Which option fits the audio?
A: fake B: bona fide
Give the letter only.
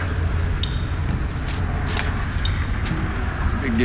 B